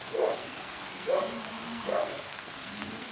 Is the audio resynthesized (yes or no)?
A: yes